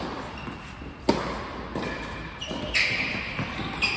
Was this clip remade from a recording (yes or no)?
no